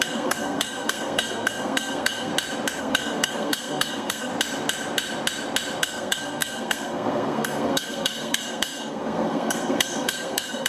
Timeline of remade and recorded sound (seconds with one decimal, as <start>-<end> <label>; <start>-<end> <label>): 0.0-2.3 remade; 2.3-2.8 recorded; 2.8-4.3 remade; 4.3-5.8 recorded; 5.8-10.7 remade